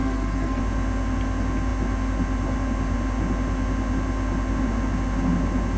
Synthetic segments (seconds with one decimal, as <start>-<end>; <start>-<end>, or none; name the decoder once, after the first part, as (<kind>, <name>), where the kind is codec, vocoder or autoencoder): 0.0-0.6 (codec, SNAC)